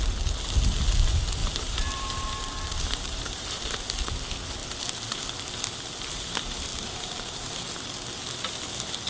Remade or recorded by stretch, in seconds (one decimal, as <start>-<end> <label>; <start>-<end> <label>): 0.0-1.4 recorded; 1.4-3.9 remade; 3.9-6.7 recorded; 6.7-7.6 remade; 7.6-9.1 recorded